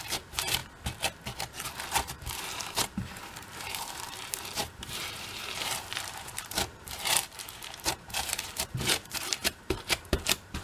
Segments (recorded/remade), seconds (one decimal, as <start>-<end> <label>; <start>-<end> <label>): 0.0-0.6 remade; 0.6-1.9 recorded; 1.9-10.6 remade